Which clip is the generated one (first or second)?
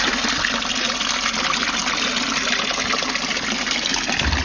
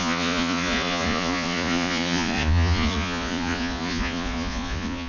second